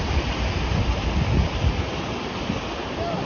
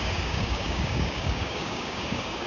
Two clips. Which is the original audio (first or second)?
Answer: first